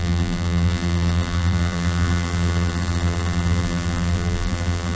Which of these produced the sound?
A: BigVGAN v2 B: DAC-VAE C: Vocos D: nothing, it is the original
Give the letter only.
A